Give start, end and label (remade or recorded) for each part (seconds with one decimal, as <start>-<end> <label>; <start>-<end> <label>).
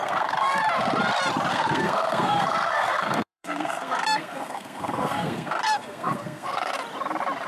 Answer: 0.0-0.6 remade; 0.6-1.5 recorded; 1.5-6.7 remade; 6.7-7.5 recorded